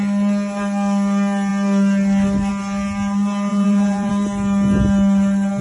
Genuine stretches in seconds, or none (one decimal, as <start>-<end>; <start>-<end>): 0.0-3.5; 4.1-5.6